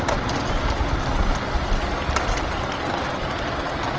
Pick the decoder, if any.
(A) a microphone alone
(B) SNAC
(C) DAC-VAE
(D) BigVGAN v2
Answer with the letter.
A